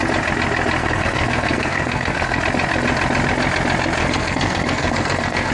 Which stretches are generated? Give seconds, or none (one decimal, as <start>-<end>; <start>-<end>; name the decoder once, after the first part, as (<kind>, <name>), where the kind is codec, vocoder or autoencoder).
0.8-2.4 (codec, SNAC); 4.0-5.5